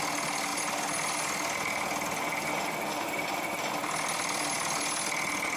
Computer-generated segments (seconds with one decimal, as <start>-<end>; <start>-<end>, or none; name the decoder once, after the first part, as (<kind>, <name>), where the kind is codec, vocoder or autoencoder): none

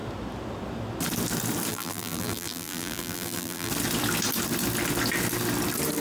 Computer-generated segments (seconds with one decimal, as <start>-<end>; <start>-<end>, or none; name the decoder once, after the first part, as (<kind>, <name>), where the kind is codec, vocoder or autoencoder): 1.7-3.7 (vocoder, BigVGAN v2)

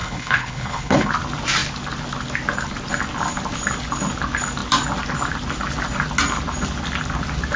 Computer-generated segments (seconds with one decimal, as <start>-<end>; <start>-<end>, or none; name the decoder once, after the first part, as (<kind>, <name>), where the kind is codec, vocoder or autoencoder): 0.0-1.1 (codec, HILCodec)

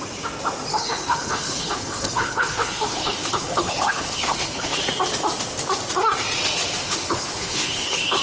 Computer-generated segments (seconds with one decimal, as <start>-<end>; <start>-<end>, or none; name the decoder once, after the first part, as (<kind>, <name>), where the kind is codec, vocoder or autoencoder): 0.7-4.8 (codec, HILCodec); 6.8-8.2

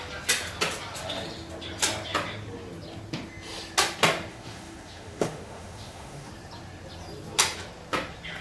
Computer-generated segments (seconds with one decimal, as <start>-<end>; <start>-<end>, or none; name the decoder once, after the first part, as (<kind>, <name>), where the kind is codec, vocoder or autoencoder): 4.3-6.3 (autoencoder, DAC-VAE)

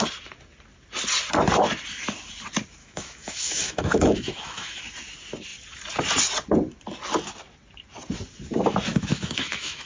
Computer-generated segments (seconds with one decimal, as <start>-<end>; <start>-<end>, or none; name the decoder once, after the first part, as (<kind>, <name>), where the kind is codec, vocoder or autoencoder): 2.8-4.8 (autoencoder, DAC-VAE); 8.9-9.9

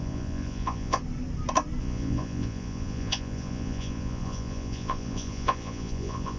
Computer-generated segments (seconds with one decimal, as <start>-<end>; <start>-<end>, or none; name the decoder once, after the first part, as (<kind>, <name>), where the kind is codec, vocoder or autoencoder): 0.0-1.0 (vocoder, Vocos); 1.8-6.4